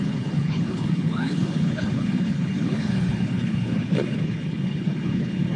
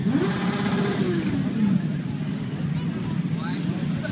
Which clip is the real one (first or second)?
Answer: second